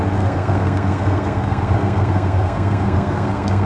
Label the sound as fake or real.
fake